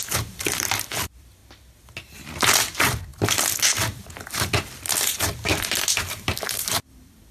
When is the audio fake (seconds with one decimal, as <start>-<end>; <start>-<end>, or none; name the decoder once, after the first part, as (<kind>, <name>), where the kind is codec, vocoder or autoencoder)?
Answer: 0.0-1.4 (vocoder, BigVGAN v2); 2.6-7.3